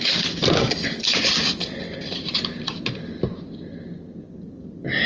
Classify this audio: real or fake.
real